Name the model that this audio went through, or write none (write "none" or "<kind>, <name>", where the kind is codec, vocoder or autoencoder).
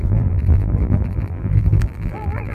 vocoder, BigVGAN v2